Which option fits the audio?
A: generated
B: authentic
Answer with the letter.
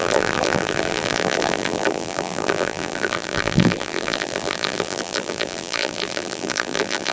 A